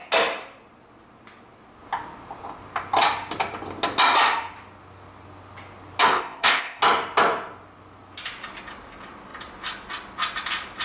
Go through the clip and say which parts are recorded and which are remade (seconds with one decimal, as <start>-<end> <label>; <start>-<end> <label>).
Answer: 0.0-6.1 recorded; 6.1-6.8 remade; 6.8-10.8 recorded